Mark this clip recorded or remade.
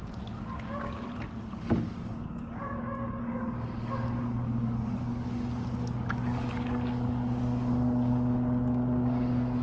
remade